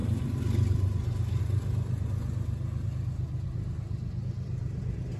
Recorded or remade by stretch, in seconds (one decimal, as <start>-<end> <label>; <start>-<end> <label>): 0.0-1.4 remade; 1.4-5.2 recorded